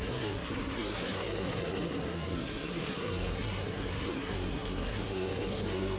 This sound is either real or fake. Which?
fake